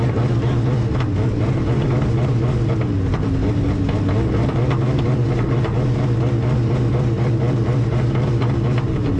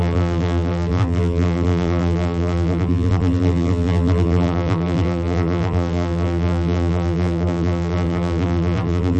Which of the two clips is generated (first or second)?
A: second